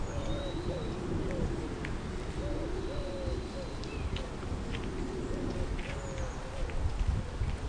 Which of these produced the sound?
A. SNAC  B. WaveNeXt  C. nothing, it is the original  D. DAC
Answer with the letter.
C